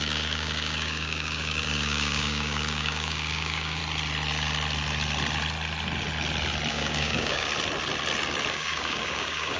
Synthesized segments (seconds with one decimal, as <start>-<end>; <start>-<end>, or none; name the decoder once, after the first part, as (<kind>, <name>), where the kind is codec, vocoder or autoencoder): 0.0-3.8 (codec, DAC); 6.7-7.5; 8.5-9.6

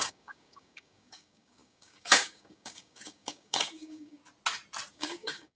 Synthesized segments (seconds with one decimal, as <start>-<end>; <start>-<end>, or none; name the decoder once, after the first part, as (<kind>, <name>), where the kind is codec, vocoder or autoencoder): 0.0-4.2 (codec, DAC); 4.9-5.5

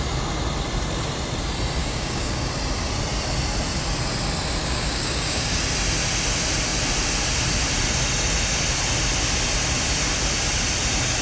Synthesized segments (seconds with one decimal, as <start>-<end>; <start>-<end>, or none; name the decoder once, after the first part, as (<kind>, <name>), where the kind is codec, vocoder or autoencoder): 1.8-2.5 (codec, DAC); 4.6-5.6

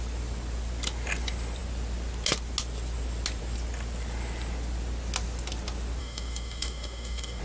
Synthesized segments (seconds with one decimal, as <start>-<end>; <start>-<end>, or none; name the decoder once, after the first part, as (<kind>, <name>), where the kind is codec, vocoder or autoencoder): 6.0-7.4 (codec, DAC)

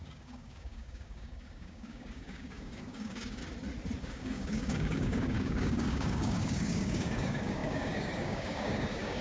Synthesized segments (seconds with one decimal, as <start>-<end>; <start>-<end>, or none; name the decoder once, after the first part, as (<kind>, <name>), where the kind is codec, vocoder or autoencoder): 0.0-3.4 (codec, DAC); 4.0-9.2